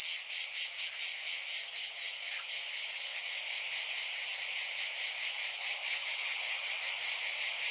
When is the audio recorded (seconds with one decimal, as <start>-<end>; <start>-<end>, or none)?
0.0-1.6; 3.3-5.5; 6.7-7.7